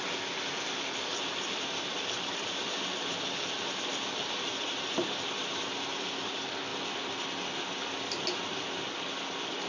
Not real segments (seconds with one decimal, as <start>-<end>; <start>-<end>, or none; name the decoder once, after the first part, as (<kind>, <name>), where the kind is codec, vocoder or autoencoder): none